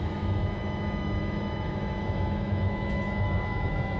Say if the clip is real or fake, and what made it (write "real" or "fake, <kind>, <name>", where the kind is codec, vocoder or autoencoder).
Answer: fake, autoencoder, DAC-VAE